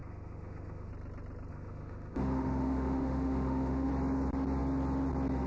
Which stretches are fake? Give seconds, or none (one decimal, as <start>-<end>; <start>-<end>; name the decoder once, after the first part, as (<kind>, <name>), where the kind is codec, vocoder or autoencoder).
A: 0.0-0.9 (autoencoder, DAC-VAE); 1.5-3.9